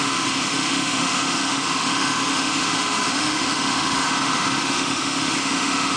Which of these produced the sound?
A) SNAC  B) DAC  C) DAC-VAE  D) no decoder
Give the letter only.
C